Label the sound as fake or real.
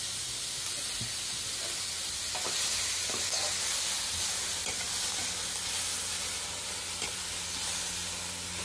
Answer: real